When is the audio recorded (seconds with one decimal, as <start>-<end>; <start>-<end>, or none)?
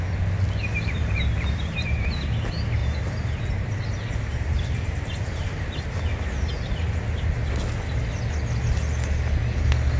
0.0-0.7; 2.3-2.8; 6.0-10.0